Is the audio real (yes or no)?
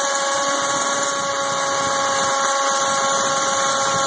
yes